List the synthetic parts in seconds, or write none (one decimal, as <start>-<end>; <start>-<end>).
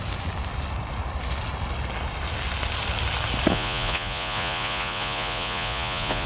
3.5-6.3